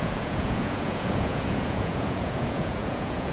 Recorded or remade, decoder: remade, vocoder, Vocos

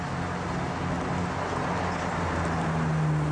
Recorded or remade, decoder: recorded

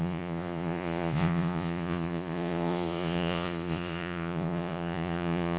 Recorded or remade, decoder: remade, vocoder, Vocos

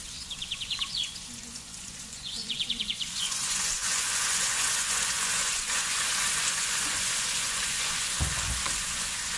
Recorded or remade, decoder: remade, vocoder, Vocos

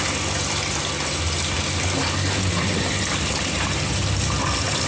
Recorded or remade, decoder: recorded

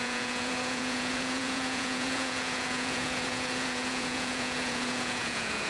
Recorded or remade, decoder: remade, vocoder, Vocos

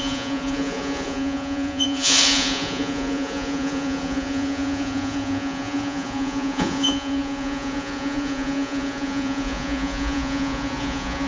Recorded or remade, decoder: remade, vocoder, Vocos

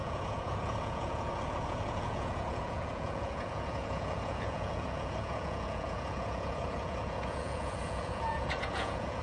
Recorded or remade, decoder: remade, vocoder, Vocos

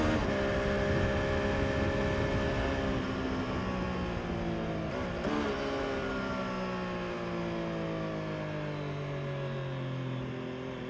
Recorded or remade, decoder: recorded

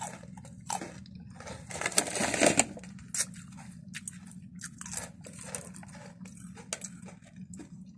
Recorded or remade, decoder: recorded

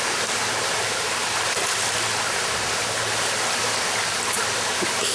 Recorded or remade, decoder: recorded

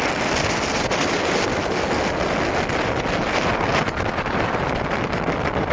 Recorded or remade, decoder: recorded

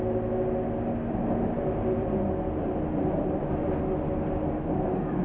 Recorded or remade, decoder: recorded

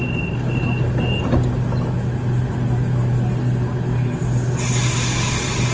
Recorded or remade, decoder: recorded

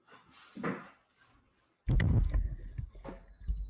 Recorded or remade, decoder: recorded